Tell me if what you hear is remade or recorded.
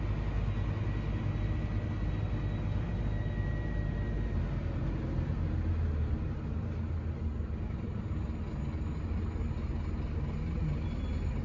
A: recorded